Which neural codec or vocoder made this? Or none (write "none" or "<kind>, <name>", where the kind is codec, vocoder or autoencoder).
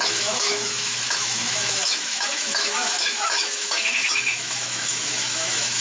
autoencoder, DAC-VAE